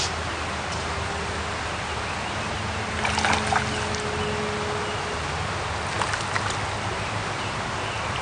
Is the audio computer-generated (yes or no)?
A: no